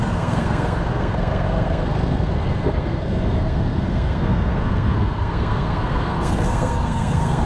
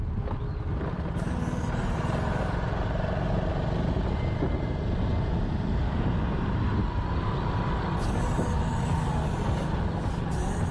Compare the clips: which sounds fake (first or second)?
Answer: first